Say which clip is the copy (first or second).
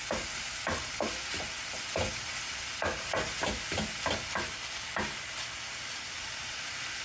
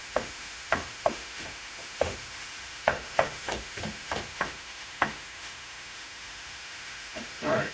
second